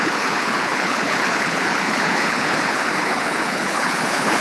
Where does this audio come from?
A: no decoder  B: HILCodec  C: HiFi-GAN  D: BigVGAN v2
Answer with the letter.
B